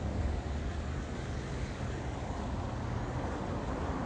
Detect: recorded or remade remade